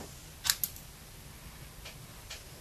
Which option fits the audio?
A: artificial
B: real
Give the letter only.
B